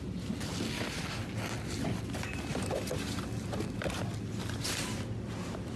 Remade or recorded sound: recorded